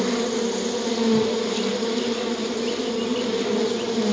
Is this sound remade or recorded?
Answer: recorded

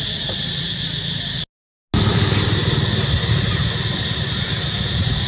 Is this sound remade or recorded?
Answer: recorded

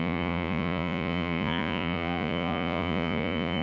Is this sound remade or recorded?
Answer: remade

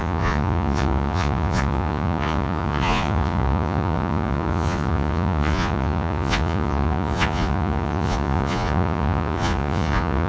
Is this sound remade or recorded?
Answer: remade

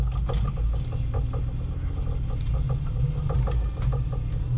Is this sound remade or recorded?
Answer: recorded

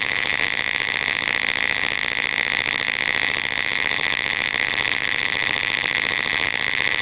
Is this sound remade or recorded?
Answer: remade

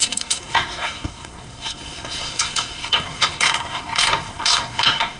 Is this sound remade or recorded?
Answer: remade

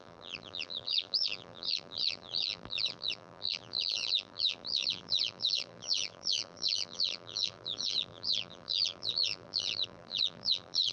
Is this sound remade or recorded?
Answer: remade